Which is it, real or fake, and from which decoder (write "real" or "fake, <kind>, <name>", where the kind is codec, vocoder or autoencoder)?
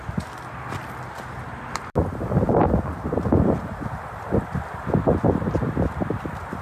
real